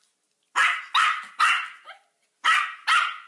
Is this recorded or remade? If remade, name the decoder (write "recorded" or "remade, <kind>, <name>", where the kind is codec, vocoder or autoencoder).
recorded